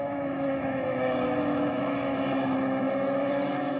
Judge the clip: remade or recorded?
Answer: remade